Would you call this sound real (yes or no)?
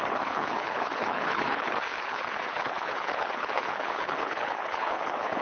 no